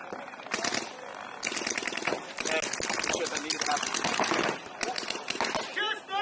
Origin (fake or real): real